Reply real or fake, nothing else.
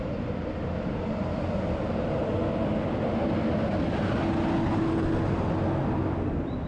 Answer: real